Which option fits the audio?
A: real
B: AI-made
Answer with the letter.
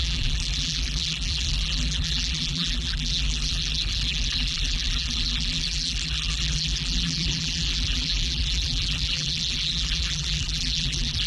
B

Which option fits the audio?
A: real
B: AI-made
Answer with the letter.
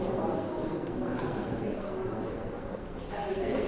B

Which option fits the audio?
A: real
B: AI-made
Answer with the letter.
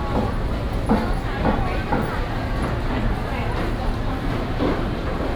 A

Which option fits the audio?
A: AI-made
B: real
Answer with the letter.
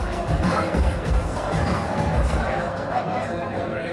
A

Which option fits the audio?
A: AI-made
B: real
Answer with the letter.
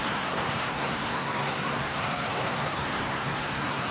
A